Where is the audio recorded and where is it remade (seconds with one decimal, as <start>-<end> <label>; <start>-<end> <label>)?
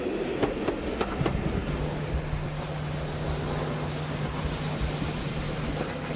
0.0-6.2 recorded